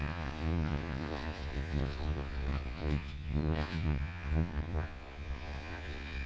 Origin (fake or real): fake